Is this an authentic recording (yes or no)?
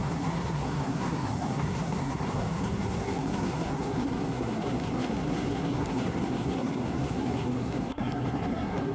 no